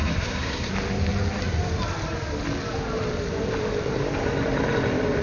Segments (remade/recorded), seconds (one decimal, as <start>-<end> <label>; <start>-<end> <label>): 0.0-0.7 remade; 0.7-5.2 recorded